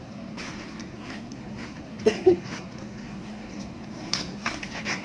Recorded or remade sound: remade